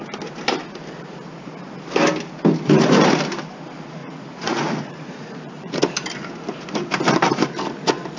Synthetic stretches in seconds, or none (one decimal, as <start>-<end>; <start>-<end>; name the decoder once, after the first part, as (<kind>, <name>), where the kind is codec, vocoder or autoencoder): 4.0-5.8 (vocoder, Vocos)